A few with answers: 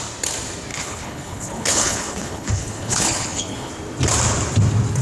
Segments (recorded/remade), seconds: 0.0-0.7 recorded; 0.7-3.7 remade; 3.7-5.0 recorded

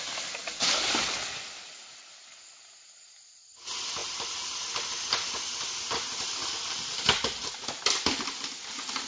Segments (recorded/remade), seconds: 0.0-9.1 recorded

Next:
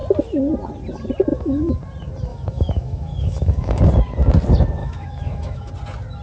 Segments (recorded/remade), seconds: 0.0-1.3 recorded; 1.3-1.8 remade; 1.8-2.3 recorded; 2.3-3.8 remade; 3.8-4.8 recorded; 4.8-5.7 remade; 5.7-6.2 recorded

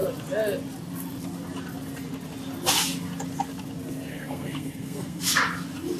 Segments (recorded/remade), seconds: 0.0-4.1 recorded; 4.1-5.2 remade; 5.2-6.0 recorded

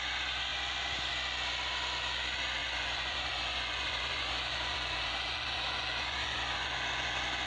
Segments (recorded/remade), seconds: 0.0-2.6 recorded; 2.6-7.1 remade; 7.1-7.5 recorded

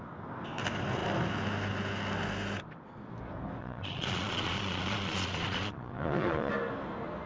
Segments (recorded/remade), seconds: 0.0-3.6 recorded; 3.6-6.5 remade; 6.5-7.3 recorded

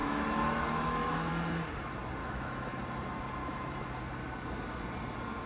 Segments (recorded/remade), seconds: 0.0-1.3 remade; 1.3-2.2 recorded; 2.2-2.8 remade; 2.8-3.4 recorded; 3.4-3.9 remade; 3.9-5.5 recorded

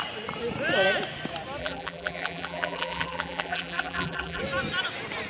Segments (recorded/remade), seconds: 0.0-1.6 recorded; 1.6-4.4 remade; 4.4-5.3 recorded